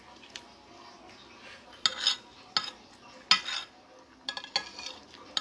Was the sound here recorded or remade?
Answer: recorded